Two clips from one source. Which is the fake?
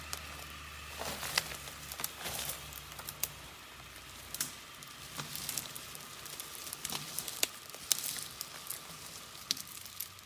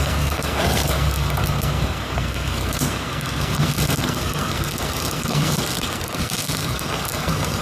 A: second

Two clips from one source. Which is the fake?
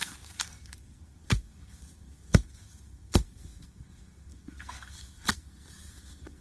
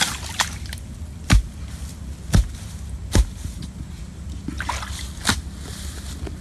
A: first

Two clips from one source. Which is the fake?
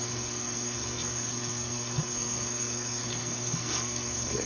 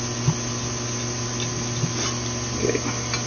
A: first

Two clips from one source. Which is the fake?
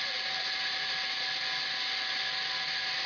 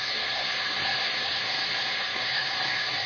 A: second